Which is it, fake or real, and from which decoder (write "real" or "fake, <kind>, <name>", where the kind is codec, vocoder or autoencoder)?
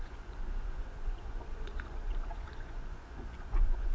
fake, vocoder, Vocos